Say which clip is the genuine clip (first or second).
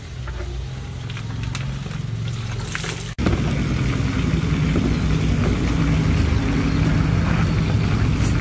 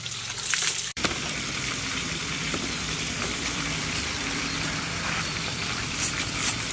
first